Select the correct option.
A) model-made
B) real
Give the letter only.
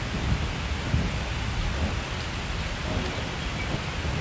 B